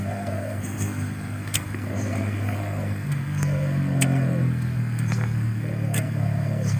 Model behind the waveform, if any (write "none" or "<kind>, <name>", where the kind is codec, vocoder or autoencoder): codec, SNAC